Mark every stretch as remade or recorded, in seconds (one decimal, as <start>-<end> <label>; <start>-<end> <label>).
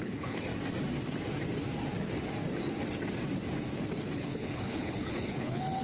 0.0-0.5 remade; 0.5-4.0 recorded; 4.0-5.8 remade